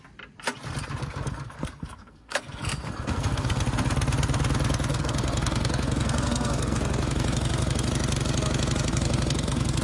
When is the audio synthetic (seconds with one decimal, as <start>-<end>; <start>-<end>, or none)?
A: 1.0-3.6; 4.9-7.9; 8.9-9.8